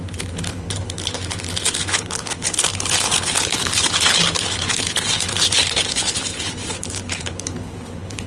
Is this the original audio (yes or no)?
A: no